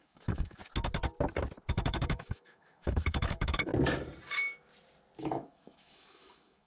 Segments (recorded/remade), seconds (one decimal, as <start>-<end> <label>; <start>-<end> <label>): 0.0-0.6 remade; 0.6-1.7 recorded; 1.7-3.7 remade; 3.7-5.2 recorded; 5.2-6.7 remade